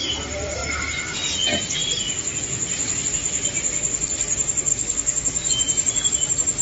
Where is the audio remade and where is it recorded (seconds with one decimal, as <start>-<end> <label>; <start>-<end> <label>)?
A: 0.0-4.7 recorded; 4.7-5.5 remade; 5.5-6.6 recorded